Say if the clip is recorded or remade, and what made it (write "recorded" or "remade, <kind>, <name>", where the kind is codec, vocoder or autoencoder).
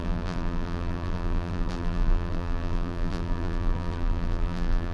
remade, vocoder, BigVGAN v2